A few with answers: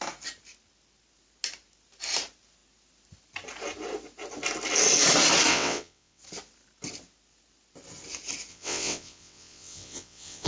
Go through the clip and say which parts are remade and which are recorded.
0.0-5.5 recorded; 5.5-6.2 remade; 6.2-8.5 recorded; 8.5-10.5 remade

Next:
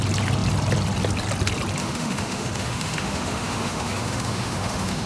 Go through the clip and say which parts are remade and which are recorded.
0.0-1.8 recorded; 1.8-5.1 remade